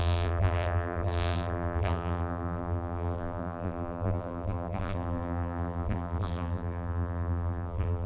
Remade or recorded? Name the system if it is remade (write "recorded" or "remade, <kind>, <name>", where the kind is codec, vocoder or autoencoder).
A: remade, vocoder, BigVGAN v2